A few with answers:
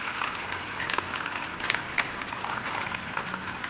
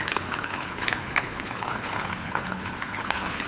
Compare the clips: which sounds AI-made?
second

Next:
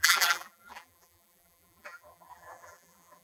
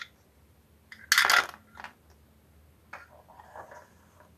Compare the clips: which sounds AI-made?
first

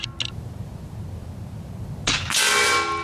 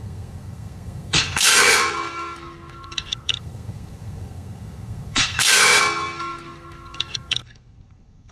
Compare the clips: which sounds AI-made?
second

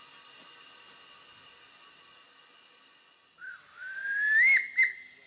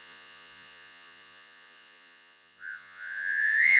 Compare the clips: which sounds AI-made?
second